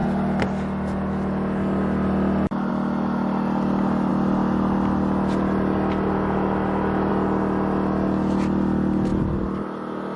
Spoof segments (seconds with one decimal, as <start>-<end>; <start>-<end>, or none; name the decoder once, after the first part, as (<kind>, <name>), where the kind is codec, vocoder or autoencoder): none